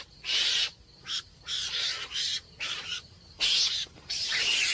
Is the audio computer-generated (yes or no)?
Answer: yes